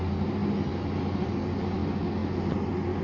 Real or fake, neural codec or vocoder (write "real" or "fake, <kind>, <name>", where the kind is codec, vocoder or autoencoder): real